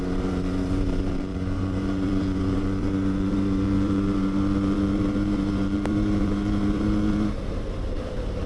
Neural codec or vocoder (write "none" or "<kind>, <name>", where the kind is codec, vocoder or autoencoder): vocoder, BigVGAN v2